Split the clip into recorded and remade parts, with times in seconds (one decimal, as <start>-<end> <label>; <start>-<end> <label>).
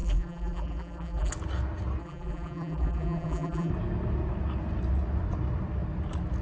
0.0-1.3 remade; 1.3-2.0 recorded; 2.0-3.7 remade; 3.7-6.4 recorded